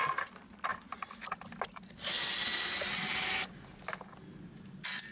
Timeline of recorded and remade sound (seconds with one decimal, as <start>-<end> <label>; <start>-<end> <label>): 0.0-5.1 recorded